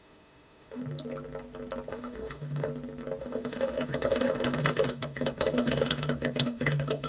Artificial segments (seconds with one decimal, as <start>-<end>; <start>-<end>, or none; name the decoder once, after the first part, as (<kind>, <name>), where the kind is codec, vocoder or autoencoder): 0.0-0.8 (autoencoder, DAC-VAE); 1.9-2.7; 3.2-7.1